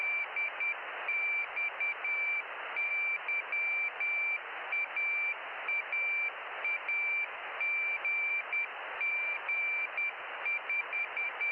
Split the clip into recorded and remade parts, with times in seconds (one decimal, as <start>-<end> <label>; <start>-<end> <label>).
0.0-2.9 remade; 2.9-8.0 recorded; 8.0-9.7 remade; 9.7-10.8 recorded; 10.8-11.5 remade